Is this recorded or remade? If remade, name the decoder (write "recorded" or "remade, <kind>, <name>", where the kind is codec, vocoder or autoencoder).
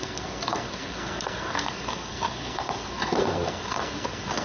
remade, codec, SNAC